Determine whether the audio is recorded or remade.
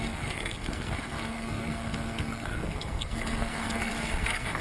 remade